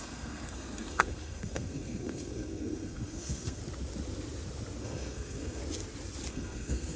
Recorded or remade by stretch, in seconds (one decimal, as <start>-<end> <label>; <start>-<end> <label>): 0.0-3.6 remade; 3.6-4.8 recorded; 4.8-5.6 remade; 5.6-6.3 recorded; 6.3-7.0 remade